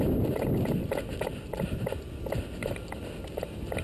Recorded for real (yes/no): yes